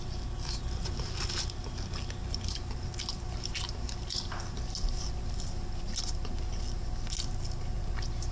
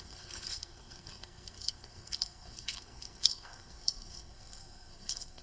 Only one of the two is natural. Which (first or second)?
first